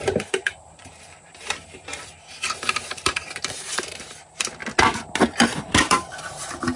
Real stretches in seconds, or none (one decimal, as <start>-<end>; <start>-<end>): 4.6-5.8